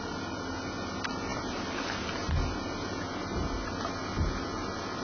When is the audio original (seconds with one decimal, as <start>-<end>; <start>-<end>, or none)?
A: 0.0-5.0